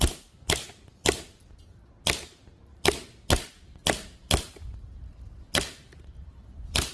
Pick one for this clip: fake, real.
real